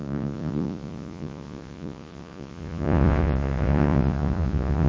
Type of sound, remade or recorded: remade